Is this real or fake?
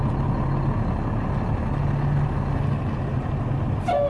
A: real